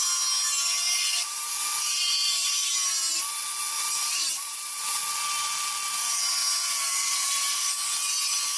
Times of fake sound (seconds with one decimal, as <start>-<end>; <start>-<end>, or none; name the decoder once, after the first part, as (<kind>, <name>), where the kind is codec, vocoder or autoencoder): 1.2-2.7 (vocoder, BigVGAN v2); 3.8-5.1; 6.4-7.7